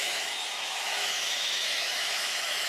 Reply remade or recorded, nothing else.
remade